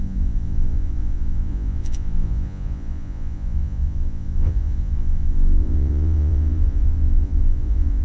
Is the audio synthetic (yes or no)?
yes